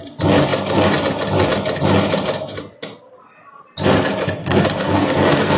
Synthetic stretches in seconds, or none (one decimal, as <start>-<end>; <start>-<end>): 4.4-5.6